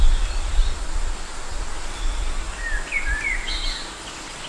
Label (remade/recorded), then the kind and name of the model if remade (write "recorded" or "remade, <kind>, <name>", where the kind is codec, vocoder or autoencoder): recorded